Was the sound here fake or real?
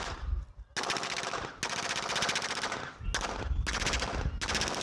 real